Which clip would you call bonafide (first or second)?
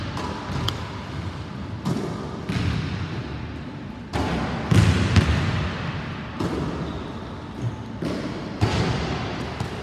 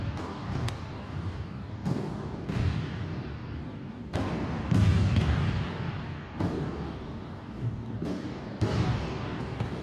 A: first